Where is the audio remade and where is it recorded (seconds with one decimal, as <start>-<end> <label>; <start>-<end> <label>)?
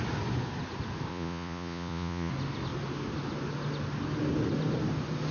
0.0-1.1 recorded; 1.1-2.3 remade; 2.3-5.3 recorded